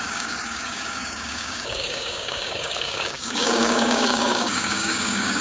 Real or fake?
fake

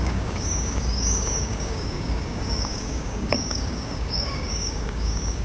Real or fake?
fake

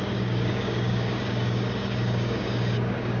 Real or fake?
fake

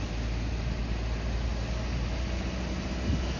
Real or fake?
real